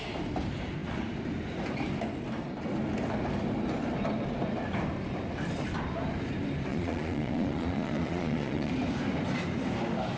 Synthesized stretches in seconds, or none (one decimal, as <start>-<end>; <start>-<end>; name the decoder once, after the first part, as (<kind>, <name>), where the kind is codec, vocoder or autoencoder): 6.7-8.7 (vocoder, Vocos)